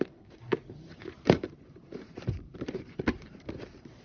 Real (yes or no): no